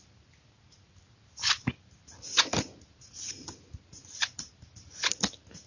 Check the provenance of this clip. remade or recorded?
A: recorded